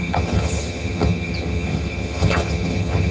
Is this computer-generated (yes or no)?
yes